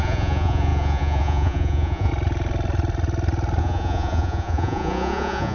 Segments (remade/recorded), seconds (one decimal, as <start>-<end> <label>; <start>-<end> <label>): 0.0-2.1 remade; 2.1-3.6 recorded; 3.6-5.5 remade